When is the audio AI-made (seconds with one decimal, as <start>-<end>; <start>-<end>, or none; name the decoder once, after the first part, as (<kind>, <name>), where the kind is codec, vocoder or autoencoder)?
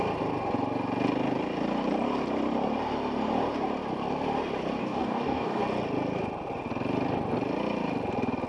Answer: 4.8-5.6 (codec, DAC)